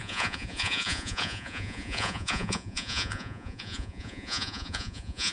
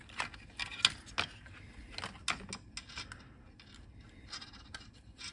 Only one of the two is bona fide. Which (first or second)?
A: second